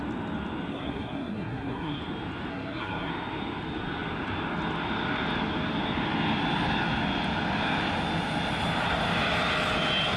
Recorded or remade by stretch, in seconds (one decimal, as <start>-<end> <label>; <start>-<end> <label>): 0.0-0.7 recorded; 0.7-2.0 remade; 2.0-2.5 recorded; 2.5-3.1 remade; 3.1-10.2 recorded